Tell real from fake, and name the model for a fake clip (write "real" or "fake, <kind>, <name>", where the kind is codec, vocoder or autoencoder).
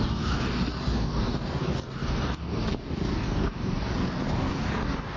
fake, codec, DAC